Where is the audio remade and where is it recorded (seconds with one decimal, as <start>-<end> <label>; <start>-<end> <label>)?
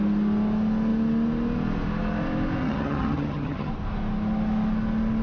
0.0-2.6 recorded; 2.6-3.7 remade; 3.7-5.2 recorded